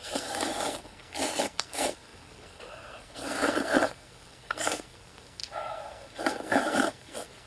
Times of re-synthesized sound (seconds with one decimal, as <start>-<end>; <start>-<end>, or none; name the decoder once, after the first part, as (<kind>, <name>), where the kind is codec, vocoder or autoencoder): 0.0-7.5 (codec, SNAC)